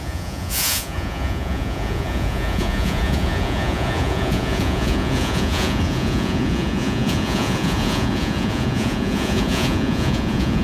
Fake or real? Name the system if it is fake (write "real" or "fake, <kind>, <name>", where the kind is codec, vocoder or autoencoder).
fake, vocoder, Vocos